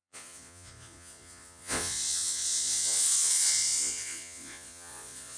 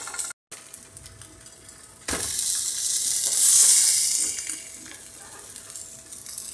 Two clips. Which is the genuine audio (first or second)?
second